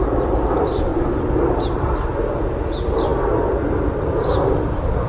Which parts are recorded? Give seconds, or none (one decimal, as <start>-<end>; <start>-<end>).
none